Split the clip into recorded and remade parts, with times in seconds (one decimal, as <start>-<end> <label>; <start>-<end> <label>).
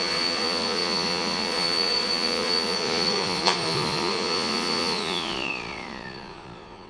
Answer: 0.0-6.9 remade